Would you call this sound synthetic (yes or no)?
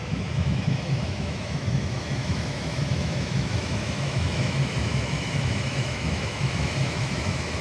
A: yes